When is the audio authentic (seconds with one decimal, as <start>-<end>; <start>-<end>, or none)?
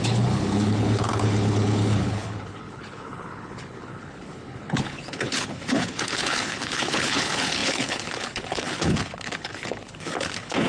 none